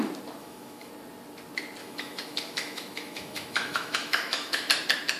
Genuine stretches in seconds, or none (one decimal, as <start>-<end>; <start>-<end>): 0.0-0.4; 0.9-1.8; 4.7-5.2